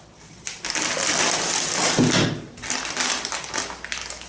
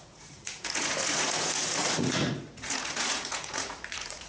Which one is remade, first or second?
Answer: second